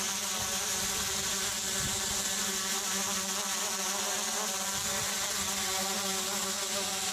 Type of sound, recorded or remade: recorded